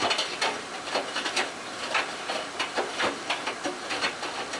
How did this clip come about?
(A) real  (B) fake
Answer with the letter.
A